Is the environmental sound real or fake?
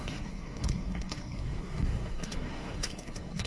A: fake